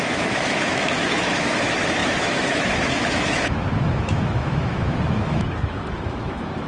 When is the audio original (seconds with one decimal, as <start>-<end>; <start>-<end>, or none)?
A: none